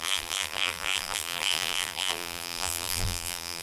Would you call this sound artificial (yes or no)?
yes